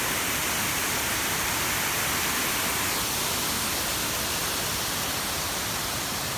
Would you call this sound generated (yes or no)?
no